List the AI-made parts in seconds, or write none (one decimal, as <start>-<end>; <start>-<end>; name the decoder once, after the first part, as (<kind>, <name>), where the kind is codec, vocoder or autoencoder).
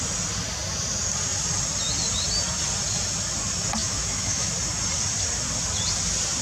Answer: 3.8-4.5 (autoencoder, DAC-VAE)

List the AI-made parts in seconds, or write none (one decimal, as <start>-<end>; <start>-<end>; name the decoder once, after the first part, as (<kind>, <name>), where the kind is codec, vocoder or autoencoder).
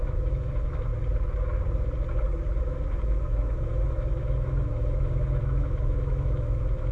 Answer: 0.0-0.9 (autoencoder, DAC-VAE); 2.6-6.9